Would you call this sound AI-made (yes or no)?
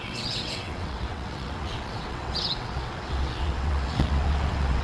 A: yes